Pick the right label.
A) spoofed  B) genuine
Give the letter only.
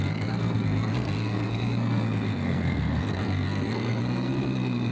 A